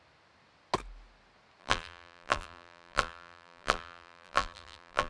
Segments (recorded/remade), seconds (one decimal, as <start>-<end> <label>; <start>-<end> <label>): 0.0-1.6 recorded; 1.6-5.1 remade